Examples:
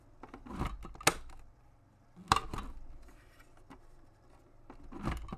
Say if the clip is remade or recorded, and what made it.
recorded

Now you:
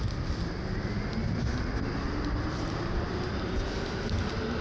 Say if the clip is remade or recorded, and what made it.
recorded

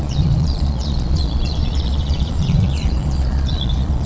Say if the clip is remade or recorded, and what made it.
remade, vocoder, Vocos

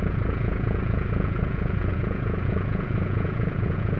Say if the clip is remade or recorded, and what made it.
remade, vocoder, Vocos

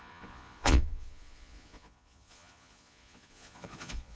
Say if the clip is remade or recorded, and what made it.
remade, vocoder, Vocos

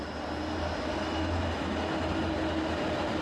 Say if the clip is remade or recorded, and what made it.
recorded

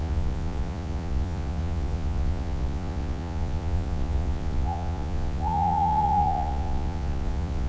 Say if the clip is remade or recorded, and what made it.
remade, vocoder, Vocos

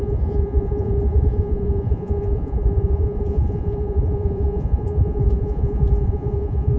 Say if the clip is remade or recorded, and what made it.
remade, vocoder, Vocos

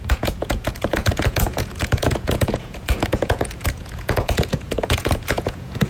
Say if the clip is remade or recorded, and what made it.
remade, vocoder, Vocos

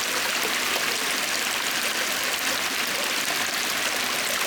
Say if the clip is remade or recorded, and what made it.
recorded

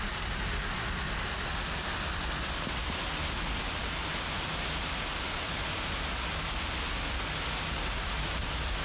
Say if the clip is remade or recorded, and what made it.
recorded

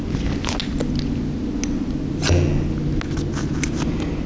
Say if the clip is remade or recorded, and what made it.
recorded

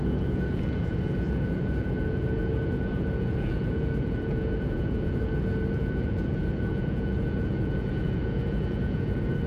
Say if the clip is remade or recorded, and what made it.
remade, vocoder, Vocos